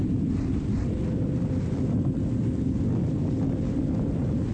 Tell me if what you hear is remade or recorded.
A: remade